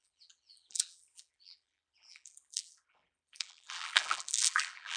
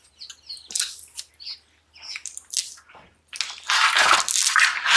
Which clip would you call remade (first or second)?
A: first